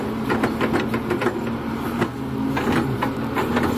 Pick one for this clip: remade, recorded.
recorded